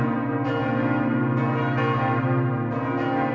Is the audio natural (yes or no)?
yes